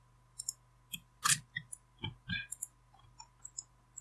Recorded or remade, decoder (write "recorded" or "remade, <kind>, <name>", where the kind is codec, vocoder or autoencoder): recorded